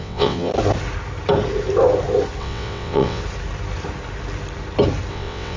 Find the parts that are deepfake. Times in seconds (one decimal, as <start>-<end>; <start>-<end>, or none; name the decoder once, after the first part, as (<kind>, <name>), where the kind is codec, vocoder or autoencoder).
0.0-0.5 (vocoder, WaveNeXt); 2.4-3.2; 5.1-5.6